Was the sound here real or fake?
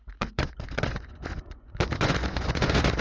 fake